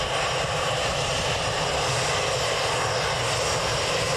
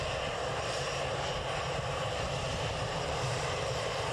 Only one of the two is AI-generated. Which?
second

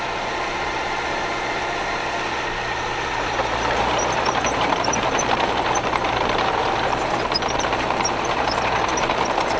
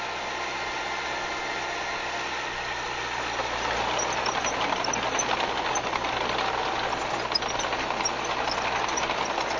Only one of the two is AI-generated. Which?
first